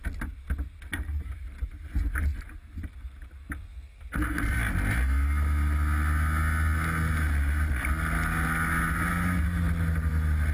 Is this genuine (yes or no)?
yes